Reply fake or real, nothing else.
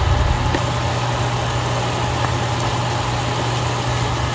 real